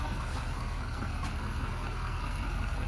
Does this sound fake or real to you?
fake